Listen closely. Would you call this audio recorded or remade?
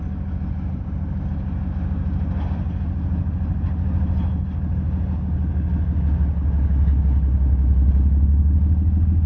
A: recorded